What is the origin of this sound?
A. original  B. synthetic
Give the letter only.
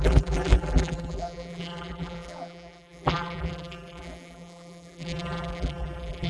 B